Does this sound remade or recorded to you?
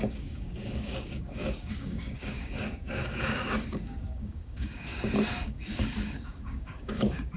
remade